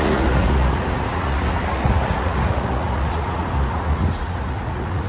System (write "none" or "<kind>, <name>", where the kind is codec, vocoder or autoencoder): vocoder, Vocos